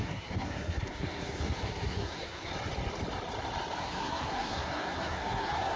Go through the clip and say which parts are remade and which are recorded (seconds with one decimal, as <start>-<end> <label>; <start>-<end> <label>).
0.0-2.5 remade; 2.5-3.8 recorded; 3.8-5.8 remade